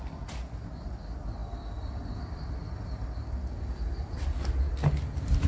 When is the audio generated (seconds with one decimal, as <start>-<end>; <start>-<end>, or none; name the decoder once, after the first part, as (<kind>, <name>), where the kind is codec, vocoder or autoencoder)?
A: none